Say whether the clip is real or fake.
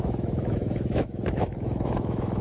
fake